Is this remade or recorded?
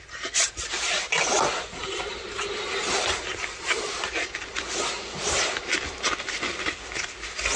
recorded